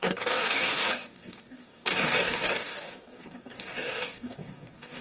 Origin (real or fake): fake